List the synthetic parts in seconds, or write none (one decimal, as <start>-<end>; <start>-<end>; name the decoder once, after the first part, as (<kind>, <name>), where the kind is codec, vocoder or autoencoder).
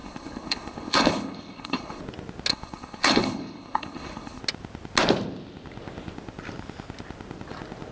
0.0-2.0 (codec, HILCodec); 2.5-4.4